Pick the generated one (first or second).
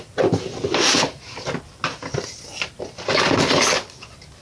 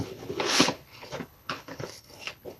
second